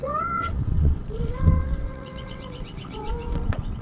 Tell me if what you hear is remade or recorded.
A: remade